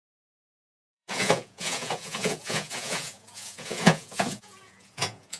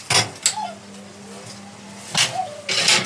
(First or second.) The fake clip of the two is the first